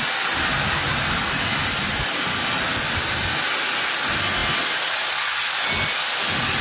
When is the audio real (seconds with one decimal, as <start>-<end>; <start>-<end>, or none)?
0.0-6.6